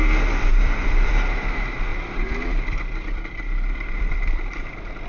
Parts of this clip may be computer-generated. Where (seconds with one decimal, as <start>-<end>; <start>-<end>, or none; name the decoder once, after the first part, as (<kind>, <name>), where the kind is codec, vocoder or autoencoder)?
0.5-1.1 (vocoder, BigVGAN v2); 1.9-5.1